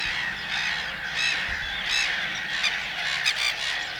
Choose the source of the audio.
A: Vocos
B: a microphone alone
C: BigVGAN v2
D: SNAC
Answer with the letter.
B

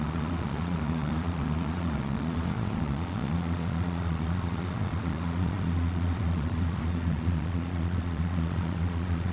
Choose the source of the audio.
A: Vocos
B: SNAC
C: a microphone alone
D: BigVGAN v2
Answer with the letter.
A